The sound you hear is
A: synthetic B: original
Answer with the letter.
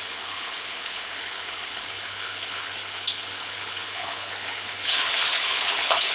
A